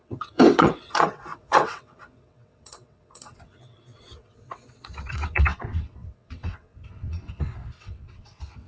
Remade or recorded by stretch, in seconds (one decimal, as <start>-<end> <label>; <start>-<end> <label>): 0.0-8.7 remade